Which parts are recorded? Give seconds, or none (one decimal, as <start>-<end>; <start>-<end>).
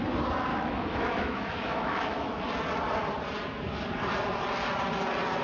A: 0.0-0.5; 2.4-5.4